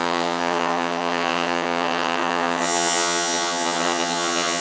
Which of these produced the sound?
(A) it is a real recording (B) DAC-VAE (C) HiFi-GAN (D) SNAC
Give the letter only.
C